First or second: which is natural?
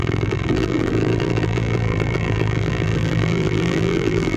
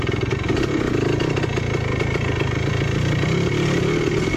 second